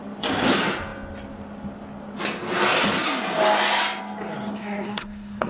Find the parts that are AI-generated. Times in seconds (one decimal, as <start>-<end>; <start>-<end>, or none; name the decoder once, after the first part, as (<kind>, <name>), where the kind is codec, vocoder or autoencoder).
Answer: 4.6-5.5 (codec, SNAC)